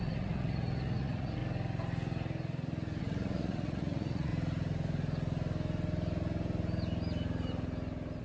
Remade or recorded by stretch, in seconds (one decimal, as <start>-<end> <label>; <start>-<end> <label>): 0.0-1.4 remade; 1.4-3.0 recorded; 3.0-4.3 remade; 4.3-8.2 recorded